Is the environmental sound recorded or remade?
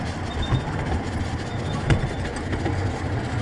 recorded